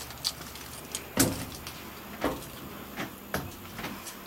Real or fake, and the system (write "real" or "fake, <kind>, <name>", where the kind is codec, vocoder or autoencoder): real